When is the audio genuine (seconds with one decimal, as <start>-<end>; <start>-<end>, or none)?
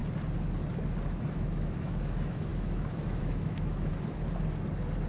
0.0-1.3; 3.9-5.1